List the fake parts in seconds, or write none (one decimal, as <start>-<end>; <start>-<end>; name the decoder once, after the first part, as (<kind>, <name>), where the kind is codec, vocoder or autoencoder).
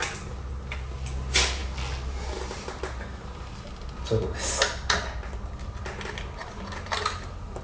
none